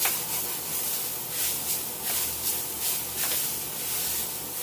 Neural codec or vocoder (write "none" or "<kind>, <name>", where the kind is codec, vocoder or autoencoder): none